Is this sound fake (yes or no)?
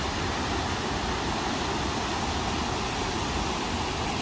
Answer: no